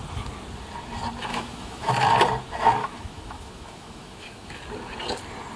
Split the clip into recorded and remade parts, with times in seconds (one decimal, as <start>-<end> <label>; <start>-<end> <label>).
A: 0.0-1.3 recorded; 1.3-1.9 remade; 1.9-2.8 recorded; 2.8-4.6 remade; 4.6-5.6 recorded